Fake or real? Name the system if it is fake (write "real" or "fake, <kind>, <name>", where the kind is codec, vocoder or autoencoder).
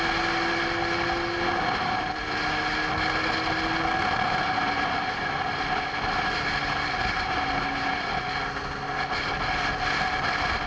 real